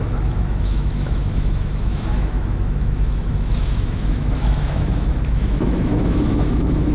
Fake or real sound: fake